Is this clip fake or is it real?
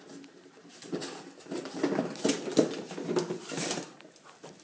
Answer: real